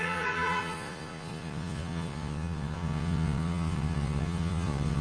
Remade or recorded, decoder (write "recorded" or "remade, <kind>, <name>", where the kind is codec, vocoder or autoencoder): remade, vocoder, Vocos